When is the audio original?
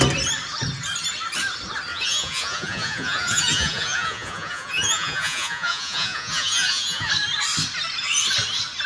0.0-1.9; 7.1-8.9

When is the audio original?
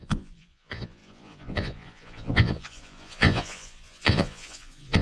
none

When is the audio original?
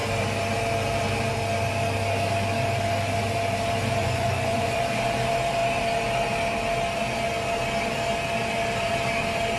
0.0-4.0; 4.8-9.6